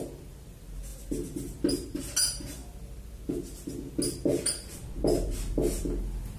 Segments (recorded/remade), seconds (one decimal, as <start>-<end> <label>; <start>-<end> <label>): 0.0-6.4 recorded